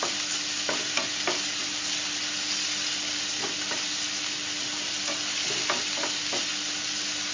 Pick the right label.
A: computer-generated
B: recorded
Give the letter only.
B